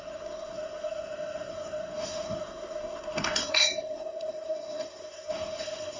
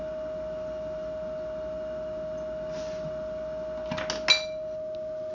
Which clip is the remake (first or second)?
first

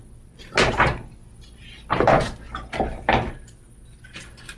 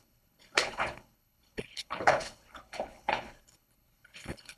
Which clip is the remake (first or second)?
second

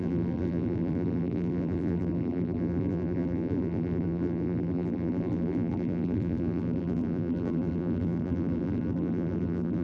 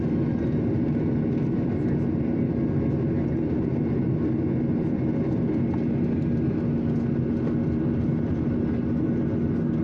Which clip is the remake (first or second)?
first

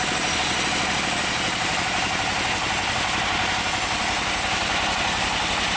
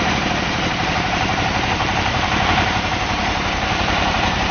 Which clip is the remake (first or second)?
second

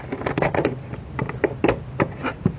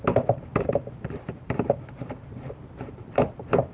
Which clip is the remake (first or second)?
second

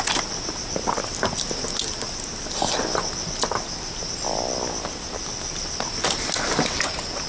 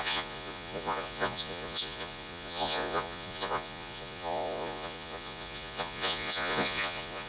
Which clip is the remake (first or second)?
second